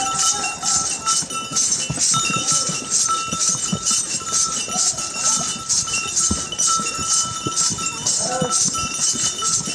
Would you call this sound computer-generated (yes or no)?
no